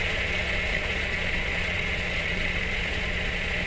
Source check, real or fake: fake